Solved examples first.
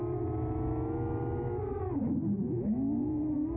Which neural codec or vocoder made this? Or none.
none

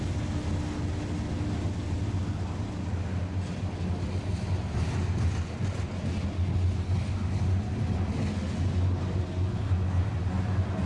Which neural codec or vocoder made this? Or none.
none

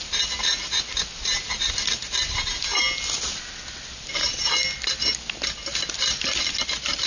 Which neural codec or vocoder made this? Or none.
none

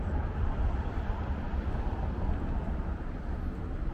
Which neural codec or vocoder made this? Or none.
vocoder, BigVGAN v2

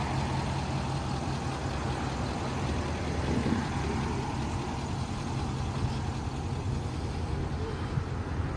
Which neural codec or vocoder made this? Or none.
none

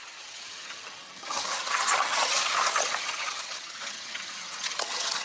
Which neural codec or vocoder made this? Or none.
vocoder, HiFi-GAN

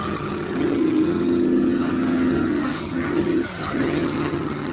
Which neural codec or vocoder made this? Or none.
vocoder, HiFi-GAN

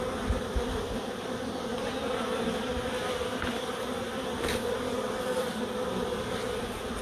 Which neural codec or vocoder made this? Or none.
none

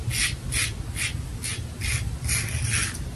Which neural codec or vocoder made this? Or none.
none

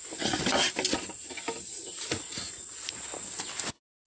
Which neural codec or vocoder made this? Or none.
none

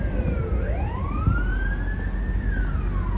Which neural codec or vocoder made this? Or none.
none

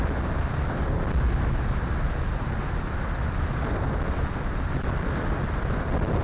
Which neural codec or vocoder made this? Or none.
none